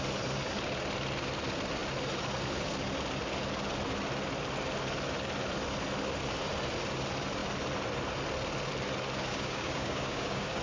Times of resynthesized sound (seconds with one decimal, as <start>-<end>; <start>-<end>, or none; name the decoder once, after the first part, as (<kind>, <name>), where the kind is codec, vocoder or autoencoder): 9.3-10.6 (codec, DAC)